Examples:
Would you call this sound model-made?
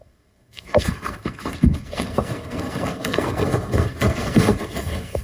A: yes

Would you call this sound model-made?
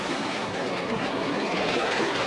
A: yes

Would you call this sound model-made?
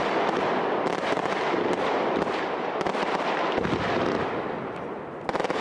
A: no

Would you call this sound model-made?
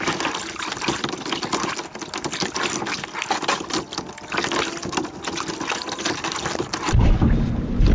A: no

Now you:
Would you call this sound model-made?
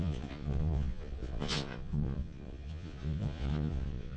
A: yes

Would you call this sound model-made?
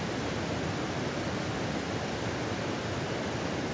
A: no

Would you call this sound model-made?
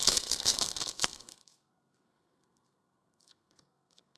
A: yes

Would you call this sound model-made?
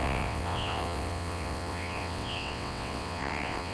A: yes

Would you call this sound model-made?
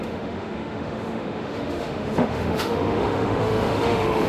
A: yes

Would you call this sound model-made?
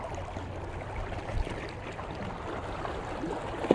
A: no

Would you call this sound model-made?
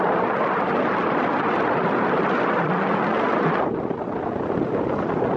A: no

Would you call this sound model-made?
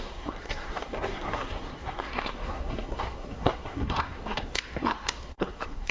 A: yes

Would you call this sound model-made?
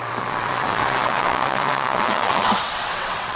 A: yes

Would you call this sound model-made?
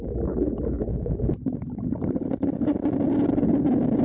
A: no